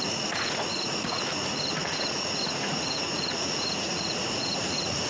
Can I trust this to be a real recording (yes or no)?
no